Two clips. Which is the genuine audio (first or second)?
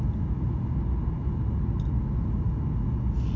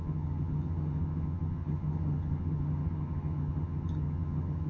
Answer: first